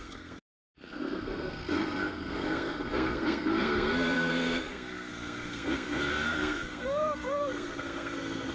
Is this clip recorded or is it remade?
remade